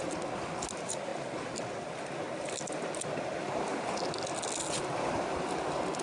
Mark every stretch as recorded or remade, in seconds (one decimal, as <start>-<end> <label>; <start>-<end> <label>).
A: 0.0-6.0 recorded